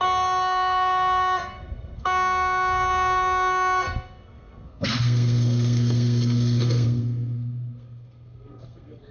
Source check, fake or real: fake